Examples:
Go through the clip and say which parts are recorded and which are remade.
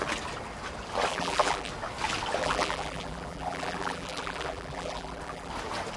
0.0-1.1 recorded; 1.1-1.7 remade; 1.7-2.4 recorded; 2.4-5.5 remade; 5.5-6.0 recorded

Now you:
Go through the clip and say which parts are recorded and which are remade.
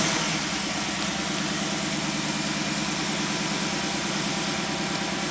0.0-1.1 remade; 1.1-3.0 recorded; 3.0-5.3 remade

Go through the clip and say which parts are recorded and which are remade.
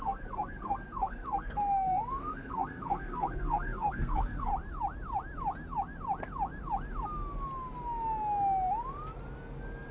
0.0-4.5 remade; 4.5-9.9 recorded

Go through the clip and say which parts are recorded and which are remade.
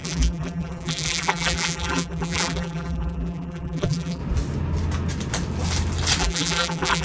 0.0-4.2 remade; 4.2-6.2 recorded; 6.2-7.0 remade